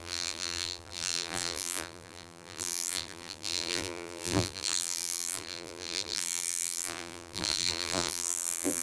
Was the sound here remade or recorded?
remade